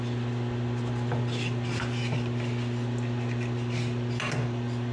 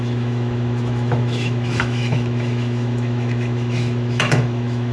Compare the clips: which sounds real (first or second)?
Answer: first